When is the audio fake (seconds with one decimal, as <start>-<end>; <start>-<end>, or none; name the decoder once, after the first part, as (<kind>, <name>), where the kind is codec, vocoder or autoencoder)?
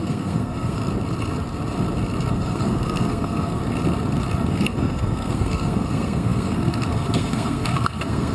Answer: 0.0-0.8 (codec, SNAC); 2.3-3.6; 4.5-8.3